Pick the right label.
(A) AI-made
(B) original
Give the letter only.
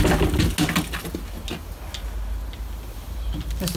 B